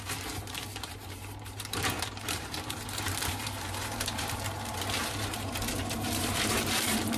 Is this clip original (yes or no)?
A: no